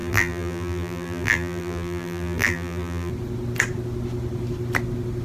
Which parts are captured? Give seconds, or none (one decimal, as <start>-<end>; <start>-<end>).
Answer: 3.1-5.2